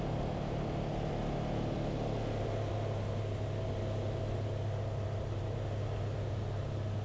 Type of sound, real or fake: real